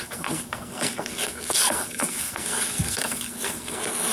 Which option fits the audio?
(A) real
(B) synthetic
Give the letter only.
B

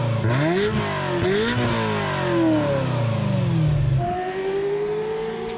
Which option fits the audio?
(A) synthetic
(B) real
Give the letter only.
B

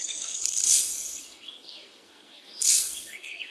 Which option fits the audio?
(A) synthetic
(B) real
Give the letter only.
A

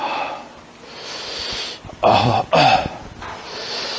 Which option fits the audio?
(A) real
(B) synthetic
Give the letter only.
A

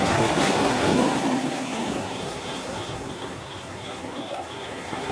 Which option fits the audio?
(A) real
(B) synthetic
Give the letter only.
B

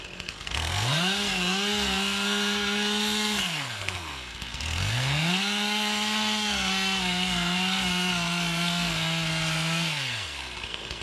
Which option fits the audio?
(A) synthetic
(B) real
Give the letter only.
A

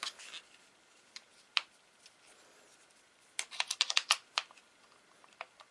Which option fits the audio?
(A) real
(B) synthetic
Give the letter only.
A